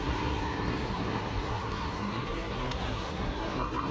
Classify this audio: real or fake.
fake